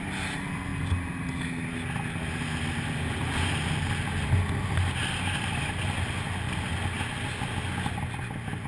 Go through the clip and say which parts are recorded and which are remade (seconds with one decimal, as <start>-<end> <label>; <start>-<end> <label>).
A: 0.0-8.7 recorded